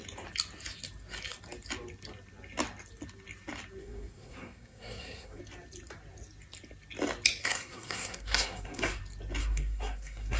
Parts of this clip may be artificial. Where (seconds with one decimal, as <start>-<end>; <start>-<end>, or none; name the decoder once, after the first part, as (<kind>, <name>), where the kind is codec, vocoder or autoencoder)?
3.8-5.4 (codec, SNAC); 7.4-9.0; 9.4-10.4